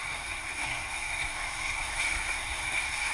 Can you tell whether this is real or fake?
fake